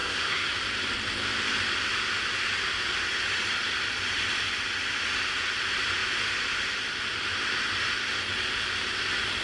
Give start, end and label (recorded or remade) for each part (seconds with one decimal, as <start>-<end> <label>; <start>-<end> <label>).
0.0-0.5 remade; 0.5-9.4 recorded